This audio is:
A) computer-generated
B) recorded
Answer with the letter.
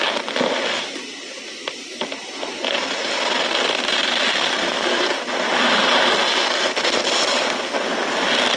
B